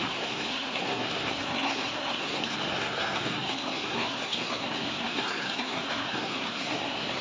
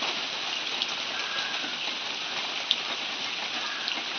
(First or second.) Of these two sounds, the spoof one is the first